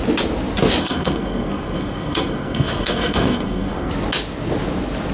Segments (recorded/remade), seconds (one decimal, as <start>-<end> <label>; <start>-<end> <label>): 0.0-0.8 recorded; 0.8-3.9 remade; 3.9-5.1 recorded